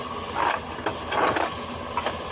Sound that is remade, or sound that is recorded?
recorded